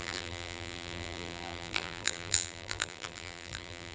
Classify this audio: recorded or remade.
remade